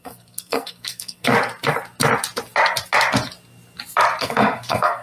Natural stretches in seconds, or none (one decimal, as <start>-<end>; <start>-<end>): 1.3-4.2